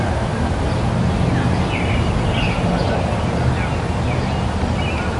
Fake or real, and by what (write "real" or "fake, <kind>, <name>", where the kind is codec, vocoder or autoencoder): real